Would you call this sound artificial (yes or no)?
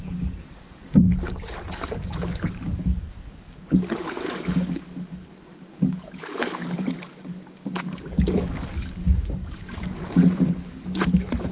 yes